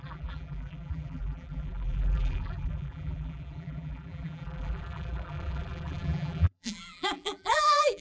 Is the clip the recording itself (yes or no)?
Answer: no